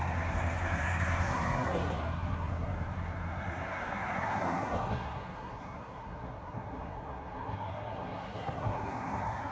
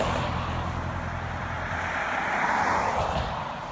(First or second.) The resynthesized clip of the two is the first